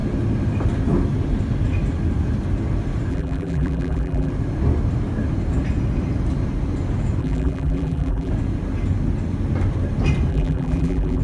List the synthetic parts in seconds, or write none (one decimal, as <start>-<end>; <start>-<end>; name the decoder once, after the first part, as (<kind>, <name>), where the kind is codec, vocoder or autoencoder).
3.1-4.3 (vocoder, BigVGAN v2); 7.2-8.3; 10.3-11.2